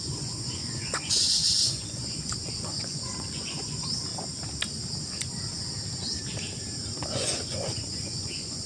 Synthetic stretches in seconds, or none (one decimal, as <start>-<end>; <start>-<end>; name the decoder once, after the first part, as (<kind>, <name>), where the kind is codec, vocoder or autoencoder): 0.0-4.1 (vocoder, Vocos); 7.1-8.7